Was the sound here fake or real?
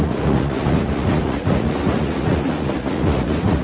fake